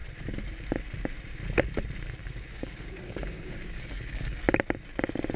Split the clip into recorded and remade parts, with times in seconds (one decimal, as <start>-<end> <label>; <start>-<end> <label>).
0.0-2.2 recorded; 2.2-4.4 remade; 4.4-5.4 recorded